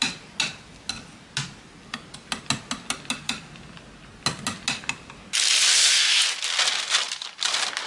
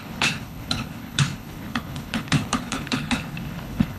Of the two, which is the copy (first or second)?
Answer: second